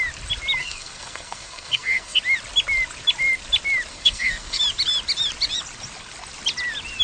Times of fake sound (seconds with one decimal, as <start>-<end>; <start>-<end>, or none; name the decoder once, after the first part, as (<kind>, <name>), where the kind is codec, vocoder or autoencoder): 0.6-2.2 (codec, SNAC); 3.9-4.6